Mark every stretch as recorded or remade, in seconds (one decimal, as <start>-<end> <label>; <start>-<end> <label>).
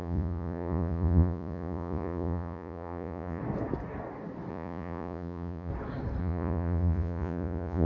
0.0-3.4 remade; 3.4-4.5 recorded; 4.5-5.7 remade; 5.7-6.2 recorded; 6.2-7.9 remade